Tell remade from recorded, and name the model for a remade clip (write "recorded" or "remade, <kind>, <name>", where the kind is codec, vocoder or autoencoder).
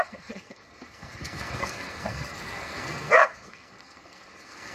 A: remade, codec, SNAC